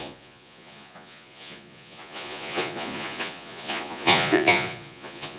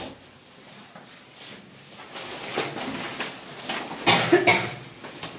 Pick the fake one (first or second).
first